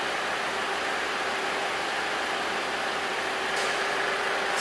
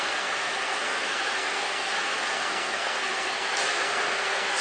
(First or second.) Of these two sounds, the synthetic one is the second